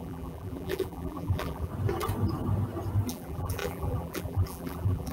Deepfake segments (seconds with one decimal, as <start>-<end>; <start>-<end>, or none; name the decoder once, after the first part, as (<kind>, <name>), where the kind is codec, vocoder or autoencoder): 0.0-1.7 (vocoder, BigVGAN v2); 3.1-5.1